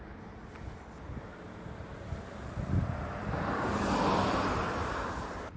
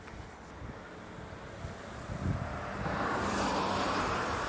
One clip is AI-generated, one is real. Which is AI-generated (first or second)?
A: first